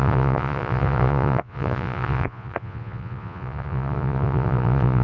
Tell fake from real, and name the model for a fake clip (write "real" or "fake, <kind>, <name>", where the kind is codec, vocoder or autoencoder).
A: fake, vocoder, Vocos